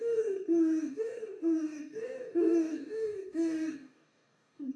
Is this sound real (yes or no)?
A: no